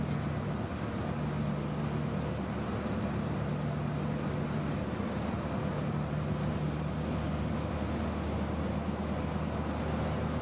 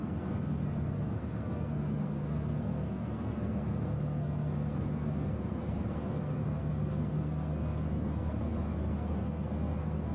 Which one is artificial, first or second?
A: second